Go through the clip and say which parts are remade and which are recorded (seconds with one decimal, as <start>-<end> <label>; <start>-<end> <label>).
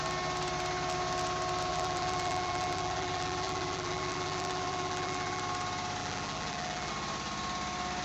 0.0-1.7 recorded; 1.7-5.4 remade; 5.4-6.0 recorded; 6.0-6.9 remade; 6.9-8.0 recorded